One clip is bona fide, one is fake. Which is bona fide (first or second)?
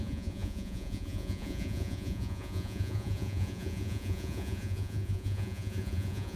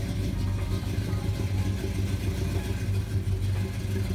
second